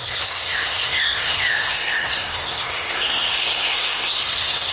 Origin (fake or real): fake